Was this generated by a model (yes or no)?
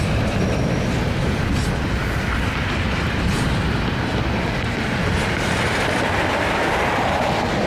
no